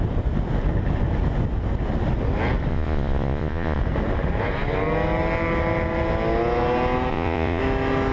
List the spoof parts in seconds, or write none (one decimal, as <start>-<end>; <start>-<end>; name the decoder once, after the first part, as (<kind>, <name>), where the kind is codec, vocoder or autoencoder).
2.7-3.8 (vocoder, Vocos); 7.1-7.6